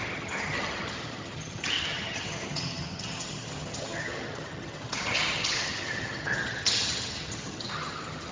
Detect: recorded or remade remade